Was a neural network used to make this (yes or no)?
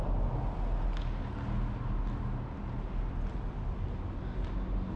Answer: no